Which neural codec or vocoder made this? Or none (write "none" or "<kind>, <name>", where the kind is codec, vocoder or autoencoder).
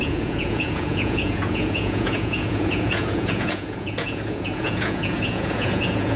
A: vocoder, Vocos